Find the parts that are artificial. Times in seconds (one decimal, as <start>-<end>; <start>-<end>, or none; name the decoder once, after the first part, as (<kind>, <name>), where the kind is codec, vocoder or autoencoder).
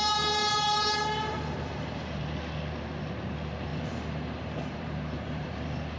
0.4-2.2 (vocoder, BigVGAN v2); 3.7-5.5